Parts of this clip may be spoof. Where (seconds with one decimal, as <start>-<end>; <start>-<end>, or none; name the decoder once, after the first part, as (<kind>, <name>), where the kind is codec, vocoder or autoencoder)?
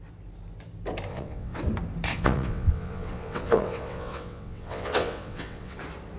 1.1-1.6 (vocoder, WaveNeXt); 2.1-5.8